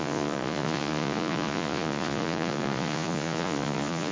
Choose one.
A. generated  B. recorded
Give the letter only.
A